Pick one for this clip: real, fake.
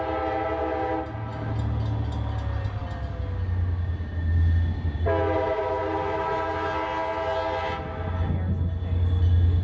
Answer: real